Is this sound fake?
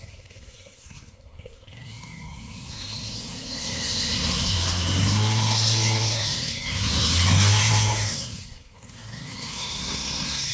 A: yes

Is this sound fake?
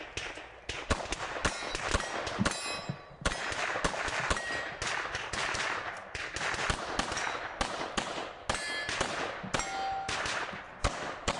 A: no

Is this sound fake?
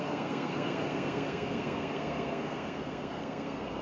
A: yes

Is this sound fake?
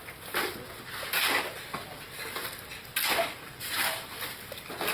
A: no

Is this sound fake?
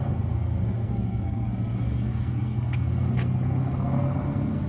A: yes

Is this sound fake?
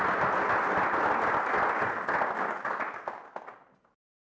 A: no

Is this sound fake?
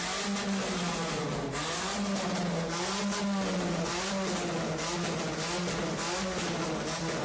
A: no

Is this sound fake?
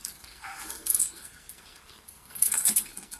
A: yes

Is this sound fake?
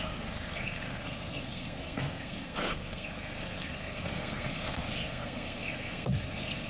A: yes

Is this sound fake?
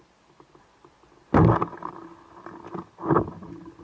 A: no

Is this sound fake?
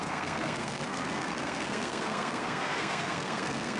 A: yes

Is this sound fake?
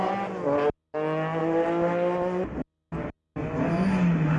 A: no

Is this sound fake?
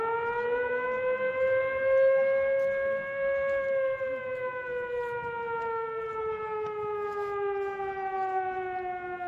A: no